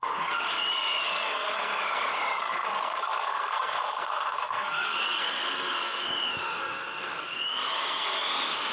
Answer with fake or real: fake